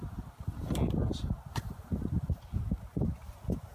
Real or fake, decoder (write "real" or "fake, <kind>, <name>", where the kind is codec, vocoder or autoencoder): fake, vocoder, BigVGAN v2